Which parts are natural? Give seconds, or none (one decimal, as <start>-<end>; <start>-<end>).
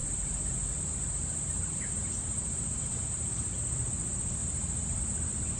3.3-4.4; 5.0-5.6